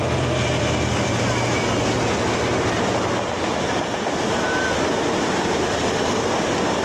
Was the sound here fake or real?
real